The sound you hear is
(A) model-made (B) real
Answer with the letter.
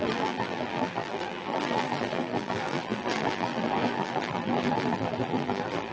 A